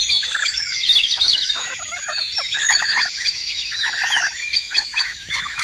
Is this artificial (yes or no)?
yes